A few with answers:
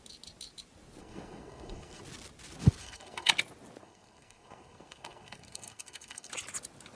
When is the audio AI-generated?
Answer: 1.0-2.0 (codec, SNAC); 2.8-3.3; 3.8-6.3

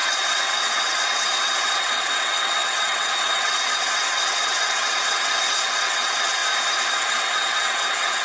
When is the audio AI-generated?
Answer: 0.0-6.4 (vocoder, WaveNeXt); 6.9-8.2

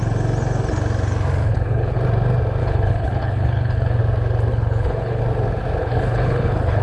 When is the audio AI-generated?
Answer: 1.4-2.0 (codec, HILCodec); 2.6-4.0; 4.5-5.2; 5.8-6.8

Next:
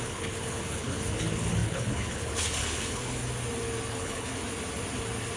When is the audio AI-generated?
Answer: 0.0-3.2 (codec, HILCodec); 3.9-4.3